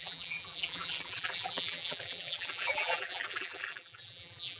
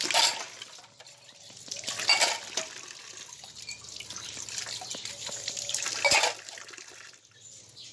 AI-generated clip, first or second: first